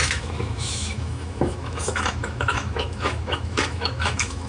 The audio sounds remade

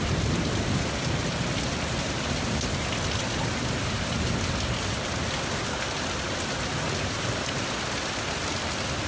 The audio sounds recorded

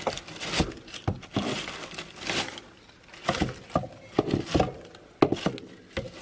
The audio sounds recorded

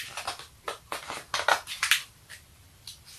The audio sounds recorded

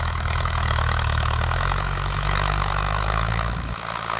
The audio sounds remade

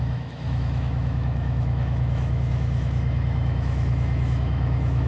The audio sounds remade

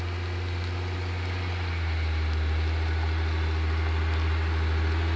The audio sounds recorded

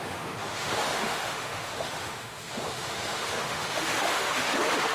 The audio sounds remade